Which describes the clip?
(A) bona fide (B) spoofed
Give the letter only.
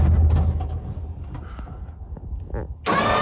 A